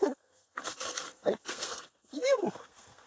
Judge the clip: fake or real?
fake